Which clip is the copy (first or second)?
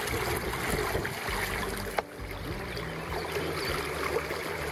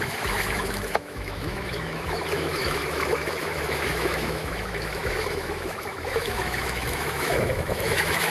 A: second